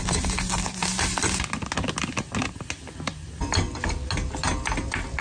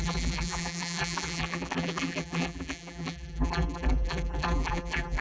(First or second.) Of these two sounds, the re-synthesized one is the second